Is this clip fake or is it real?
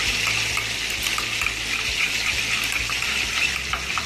real